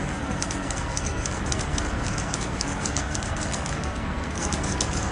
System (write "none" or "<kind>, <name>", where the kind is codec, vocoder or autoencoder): codec, SNAC